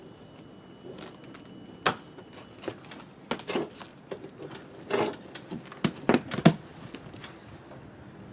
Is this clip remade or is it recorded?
recorded